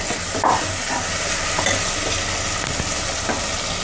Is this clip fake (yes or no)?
no